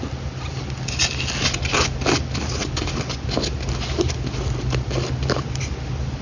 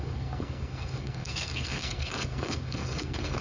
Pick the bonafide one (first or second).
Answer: first